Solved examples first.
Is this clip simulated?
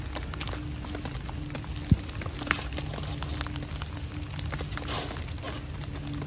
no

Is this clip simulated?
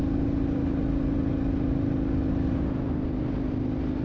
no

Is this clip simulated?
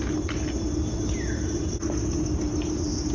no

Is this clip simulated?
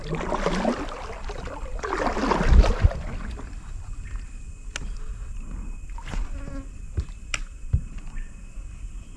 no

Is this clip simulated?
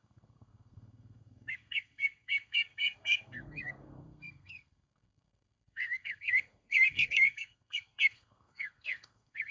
yes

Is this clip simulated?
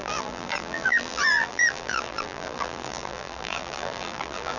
yes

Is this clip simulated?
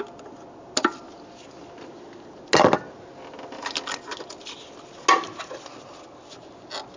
no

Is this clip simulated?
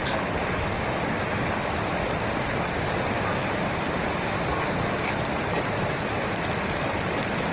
no